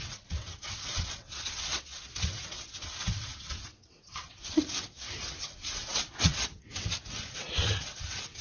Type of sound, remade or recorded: remade